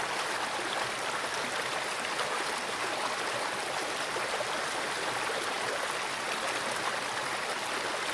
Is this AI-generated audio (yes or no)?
no